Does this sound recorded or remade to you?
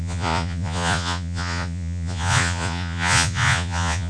remade